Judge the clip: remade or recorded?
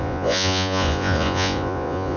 remade